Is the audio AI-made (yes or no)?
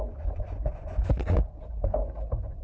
yes